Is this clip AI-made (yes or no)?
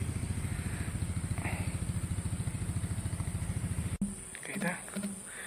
no